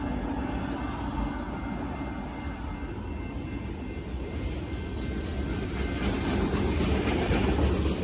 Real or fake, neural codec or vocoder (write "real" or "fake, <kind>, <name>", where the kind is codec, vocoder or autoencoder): real